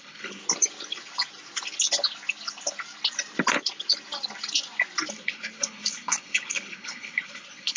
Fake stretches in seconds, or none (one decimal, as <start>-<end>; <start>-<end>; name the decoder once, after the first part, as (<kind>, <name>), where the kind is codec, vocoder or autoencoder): 0.0-0.4 (codec, HILCodec); 5.1-7.8